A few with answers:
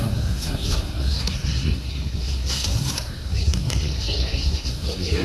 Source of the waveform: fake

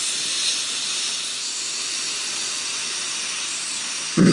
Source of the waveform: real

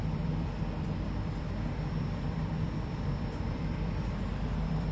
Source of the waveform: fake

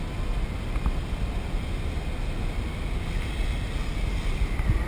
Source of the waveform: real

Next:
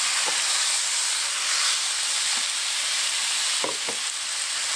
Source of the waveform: real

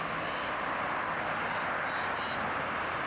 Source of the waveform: real